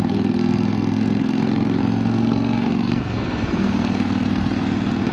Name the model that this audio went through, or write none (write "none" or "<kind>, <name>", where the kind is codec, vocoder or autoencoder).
codec, SNAC